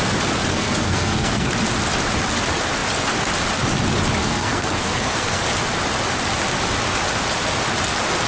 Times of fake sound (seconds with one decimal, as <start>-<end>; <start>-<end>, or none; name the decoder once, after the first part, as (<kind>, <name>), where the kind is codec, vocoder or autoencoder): 0.5-1.5 (codec, SNAC); 4.2-5.4